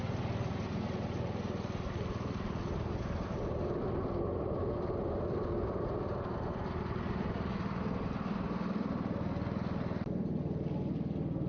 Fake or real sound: real